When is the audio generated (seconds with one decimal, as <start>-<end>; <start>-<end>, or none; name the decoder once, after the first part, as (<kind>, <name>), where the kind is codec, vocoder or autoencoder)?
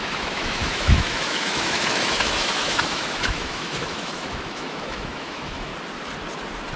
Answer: 0.0-5.7 (autoencoder, DAC-VAE)